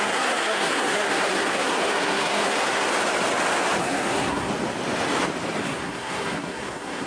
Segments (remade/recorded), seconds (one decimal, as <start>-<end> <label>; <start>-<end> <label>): 0.0-2.9 remade; 2.9-3.8 recorded; 3.8-4.5 remade; 4.5-5.6 recorded; 5.6-7.1 remade

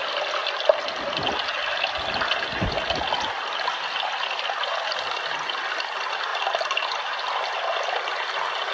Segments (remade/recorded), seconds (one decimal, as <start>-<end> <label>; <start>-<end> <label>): 0.0-8.7 recorded

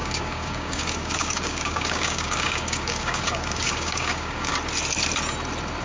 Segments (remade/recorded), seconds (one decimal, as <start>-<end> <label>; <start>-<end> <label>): 0.0-4.5 remade; 4.5-5.8 recorded

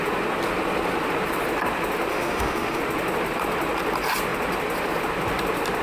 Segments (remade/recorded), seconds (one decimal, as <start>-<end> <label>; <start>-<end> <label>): 0.0-2.1 recorded; 2.1-2.8 remade; 2.8-5.8 recorded

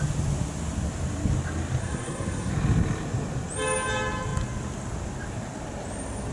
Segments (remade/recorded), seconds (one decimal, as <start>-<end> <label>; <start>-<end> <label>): 0.0-1.8 recorded; 1.8-2.5 remade; 2.5-6.3 recorded

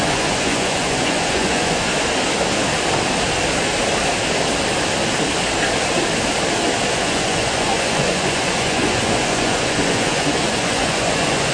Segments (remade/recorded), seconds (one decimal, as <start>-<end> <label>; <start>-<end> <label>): 0.0-1.9 remade; 1.9-6.9 recorded; 6.9-11.5 remade

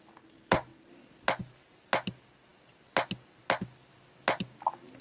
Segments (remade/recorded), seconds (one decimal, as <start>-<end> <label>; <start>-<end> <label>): 0.0-5.0 recorded